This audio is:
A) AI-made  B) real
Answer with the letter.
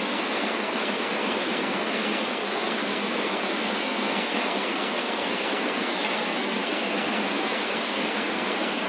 A